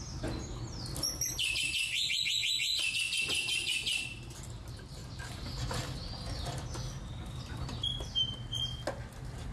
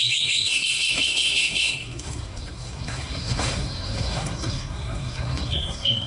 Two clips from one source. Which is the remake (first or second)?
second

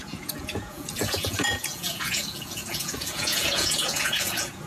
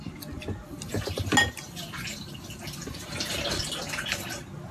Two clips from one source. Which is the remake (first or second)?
first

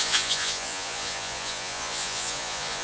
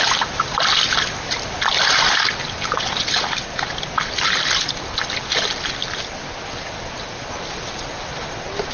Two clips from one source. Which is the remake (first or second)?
first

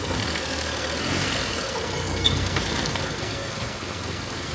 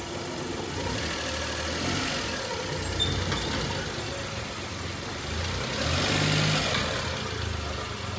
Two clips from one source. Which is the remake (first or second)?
first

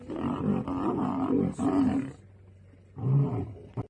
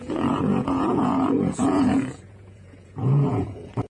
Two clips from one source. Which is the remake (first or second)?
second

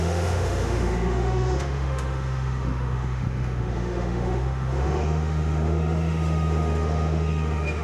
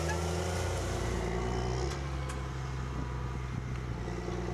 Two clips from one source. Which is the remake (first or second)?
first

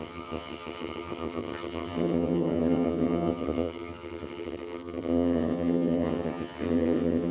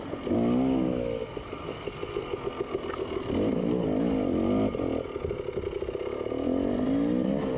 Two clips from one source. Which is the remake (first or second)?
first